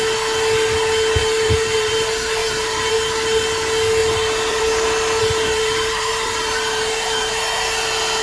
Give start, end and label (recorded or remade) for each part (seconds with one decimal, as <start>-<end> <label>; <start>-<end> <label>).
0.0-1.2 recorded; 1.2-1.9 remade; 1.9-2.4 recorded; 2.4-2.9 remade; 2.9-4.0 recorded; 4.0-4.6 remade; 4.6-5.2 recorded; 5.2-7.3 remade; 7.3-8.2 recorded